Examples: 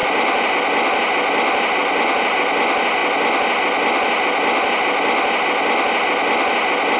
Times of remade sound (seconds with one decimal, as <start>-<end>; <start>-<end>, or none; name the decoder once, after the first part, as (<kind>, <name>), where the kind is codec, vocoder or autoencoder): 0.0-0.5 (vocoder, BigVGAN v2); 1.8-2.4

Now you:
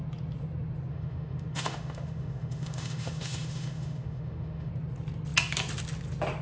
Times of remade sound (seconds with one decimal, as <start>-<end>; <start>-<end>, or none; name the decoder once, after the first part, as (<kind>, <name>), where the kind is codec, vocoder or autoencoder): 0.9-4.7 (autoencoder, DAC-VAE)

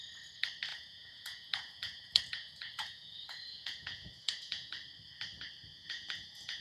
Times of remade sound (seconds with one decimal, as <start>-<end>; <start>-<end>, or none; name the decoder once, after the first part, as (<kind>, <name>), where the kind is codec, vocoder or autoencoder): 0.7-4.7 (vocoder, Vocos); 5.7-6.6